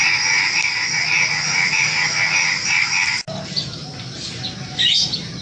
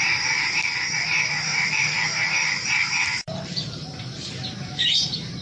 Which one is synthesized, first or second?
second